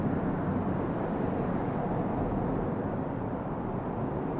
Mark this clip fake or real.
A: real